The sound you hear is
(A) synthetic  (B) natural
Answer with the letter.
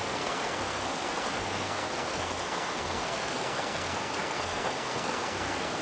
A